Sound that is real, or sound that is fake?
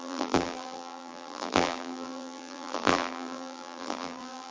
fake